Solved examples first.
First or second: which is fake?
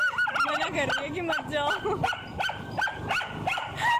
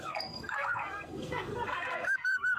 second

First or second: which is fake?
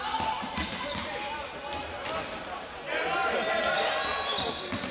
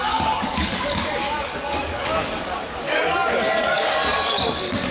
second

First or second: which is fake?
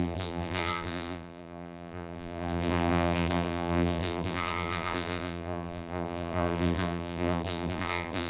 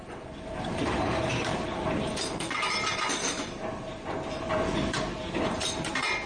first